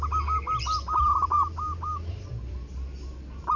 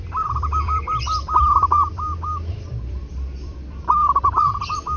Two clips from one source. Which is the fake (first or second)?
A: second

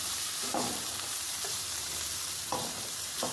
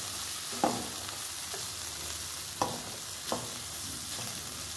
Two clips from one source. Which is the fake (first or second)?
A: first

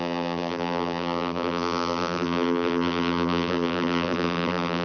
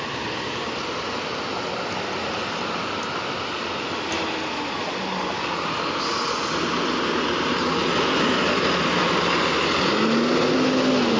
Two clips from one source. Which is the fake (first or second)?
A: first